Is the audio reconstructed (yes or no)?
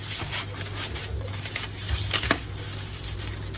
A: no